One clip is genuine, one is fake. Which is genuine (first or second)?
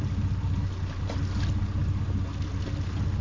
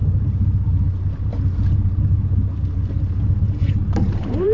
first